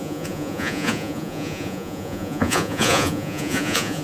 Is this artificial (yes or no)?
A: yes